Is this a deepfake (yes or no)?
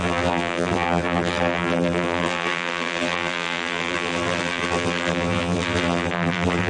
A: yes